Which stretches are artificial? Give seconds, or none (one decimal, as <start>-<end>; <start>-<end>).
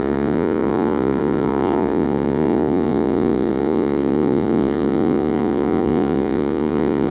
0.0-7.1